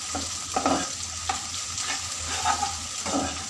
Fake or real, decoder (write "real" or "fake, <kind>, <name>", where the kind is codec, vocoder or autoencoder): real